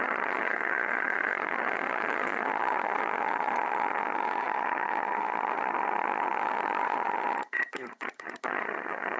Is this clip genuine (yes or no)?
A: no